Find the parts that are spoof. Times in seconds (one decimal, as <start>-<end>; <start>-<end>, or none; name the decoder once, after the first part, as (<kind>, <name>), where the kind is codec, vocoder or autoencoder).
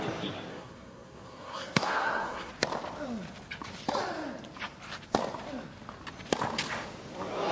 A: 0.5-2.5 (codec, SNAC)